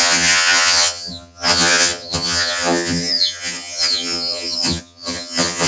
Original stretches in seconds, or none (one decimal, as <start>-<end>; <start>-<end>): none